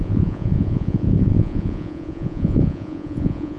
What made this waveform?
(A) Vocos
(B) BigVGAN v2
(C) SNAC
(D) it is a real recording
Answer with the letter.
A